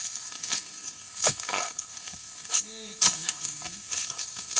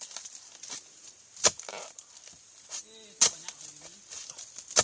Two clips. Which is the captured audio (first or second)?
second